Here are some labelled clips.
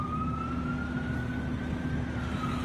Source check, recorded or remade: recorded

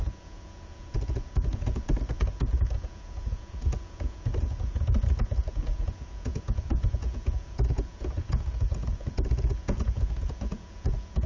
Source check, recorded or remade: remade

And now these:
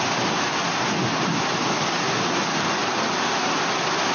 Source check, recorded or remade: recorded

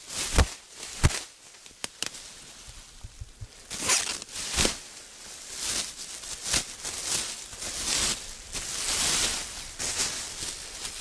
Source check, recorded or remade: recorded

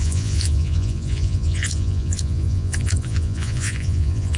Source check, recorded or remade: remade